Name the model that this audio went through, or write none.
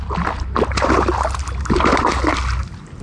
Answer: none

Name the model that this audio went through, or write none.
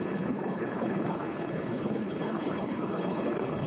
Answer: codec, HILCodec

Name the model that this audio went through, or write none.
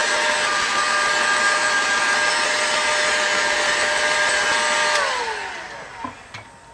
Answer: none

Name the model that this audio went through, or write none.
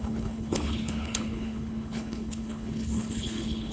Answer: codec, HILCodec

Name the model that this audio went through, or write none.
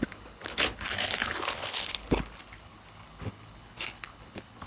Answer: codec, HILCodec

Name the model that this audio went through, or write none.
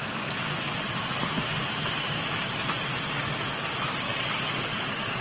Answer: none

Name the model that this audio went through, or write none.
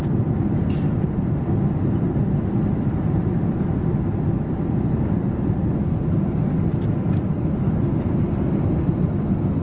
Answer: none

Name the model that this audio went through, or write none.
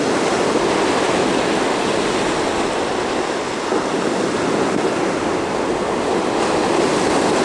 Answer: none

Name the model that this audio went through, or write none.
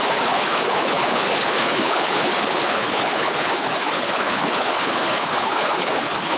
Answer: codec, HILCodec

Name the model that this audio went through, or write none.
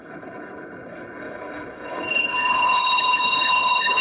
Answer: codec, HILCodec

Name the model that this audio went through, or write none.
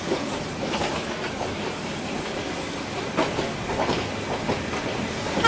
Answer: none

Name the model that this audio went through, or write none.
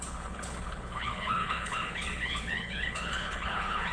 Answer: codec, HILCodec